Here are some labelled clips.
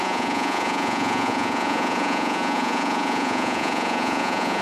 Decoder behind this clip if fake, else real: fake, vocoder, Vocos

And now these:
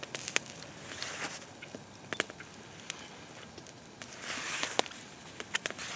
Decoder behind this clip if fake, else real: real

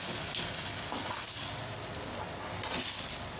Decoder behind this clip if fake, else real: real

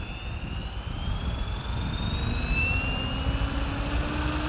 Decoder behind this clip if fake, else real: real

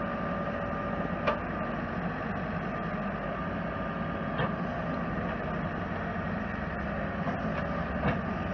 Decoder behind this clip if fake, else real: real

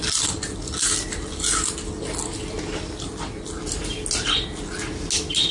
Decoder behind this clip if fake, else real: real